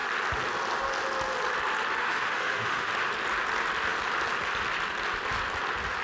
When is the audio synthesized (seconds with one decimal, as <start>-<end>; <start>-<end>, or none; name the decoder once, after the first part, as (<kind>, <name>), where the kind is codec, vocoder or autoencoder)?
2.0-2.9 (autoencoder, DAC-VAE)

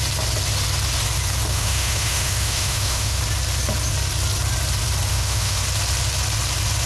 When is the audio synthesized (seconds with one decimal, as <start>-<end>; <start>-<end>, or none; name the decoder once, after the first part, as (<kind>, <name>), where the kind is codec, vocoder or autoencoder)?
1.5-3.2 (autoencoder, DAC-VAE); 5.1-5.6

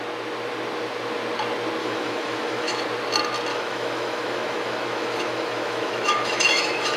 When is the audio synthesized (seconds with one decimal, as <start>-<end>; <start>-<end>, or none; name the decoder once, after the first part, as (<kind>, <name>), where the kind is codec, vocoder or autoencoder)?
1.8-2.8 (autoencoder, DAC-VAE); 3.5-7.0

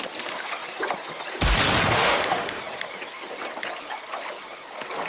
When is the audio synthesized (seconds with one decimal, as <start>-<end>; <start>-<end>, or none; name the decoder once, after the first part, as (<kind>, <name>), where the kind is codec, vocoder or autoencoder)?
2.0-2.6 (autoencoder, DAC-VAE)

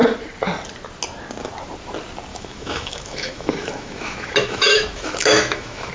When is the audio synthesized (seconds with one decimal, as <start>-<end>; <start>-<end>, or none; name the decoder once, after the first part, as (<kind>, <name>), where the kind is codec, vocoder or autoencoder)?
2.3-5.9 (autoencoder, DAC-VAE)

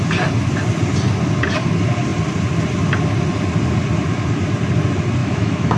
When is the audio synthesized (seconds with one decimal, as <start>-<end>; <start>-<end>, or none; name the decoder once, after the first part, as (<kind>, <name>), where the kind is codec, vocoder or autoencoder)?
5.2-5.8 (autoencoder, DAC-VAE)